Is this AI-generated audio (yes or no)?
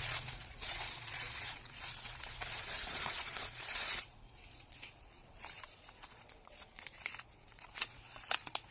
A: yes